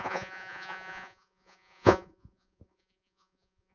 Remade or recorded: remade